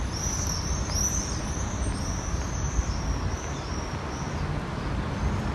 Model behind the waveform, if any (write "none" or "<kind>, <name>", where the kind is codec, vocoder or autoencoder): none